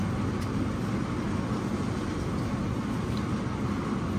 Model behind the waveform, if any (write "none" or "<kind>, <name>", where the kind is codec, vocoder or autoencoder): none